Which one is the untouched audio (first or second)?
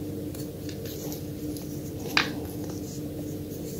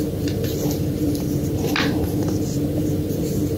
first